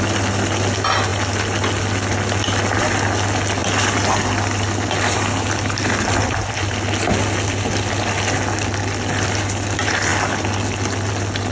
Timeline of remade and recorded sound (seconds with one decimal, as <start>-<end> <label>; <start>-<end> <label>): 0.0-11.5 recorded